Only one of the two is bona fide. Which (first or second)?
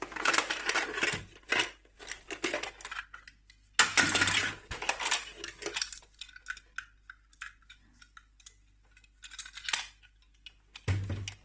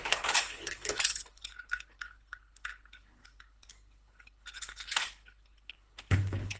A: first